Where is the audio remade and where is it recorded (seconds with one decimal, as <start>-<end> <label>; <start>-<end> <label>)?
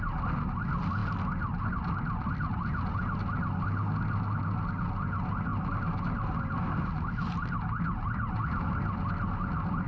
0.0-9.9 recorded